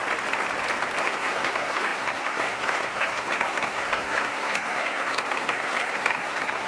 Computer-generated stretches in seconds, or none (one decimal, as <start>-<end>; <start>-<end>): 1.0-6.7